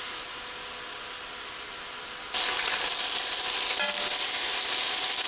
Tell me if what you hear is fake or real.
real